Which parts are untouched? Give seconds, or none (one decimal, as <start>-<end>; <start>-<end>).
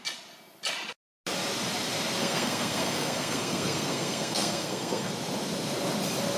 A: 0.0-2.2; 5.1-6.4